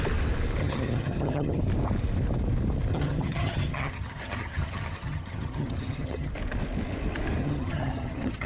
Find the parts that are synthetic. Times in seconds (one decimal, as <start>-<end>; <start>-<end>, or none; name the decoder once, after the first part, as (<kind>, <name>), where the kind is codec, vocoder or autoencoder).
0.6-1.6 (vocoder, HiFi-GAN); 2.9-6.3; 7.4-8.5